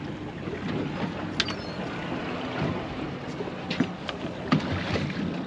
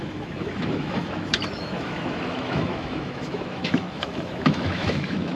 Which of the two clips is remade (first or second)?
second